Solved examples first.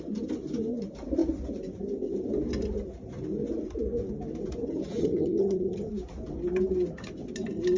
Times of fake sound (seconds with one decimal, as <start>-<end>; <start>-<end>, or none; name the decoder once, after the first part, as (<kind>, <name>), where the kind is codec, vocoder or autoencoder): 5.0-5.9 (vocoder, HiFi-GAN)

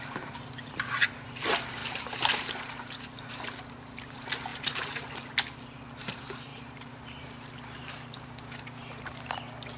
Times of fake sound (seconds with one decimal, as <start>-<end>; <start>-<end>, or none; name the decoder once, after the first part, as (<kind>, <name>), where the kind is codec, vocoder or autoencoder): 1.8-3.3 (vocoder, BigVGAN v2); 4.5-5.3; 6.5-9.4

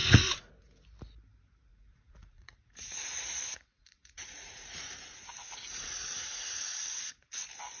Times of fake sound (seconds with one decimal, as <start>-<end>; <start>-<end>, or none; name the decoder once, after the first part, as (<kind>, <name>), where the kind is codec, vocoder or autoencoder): 0.0-0.5 (vocoder, Vocos); 1.7-5.2; 5.7-7.3